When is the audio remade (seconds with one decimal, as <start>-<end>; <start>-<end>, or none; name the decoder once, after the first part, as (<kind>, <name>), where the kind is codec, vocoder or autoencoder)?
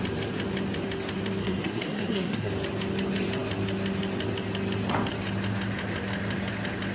1.4-2.5 (codec, SNAC)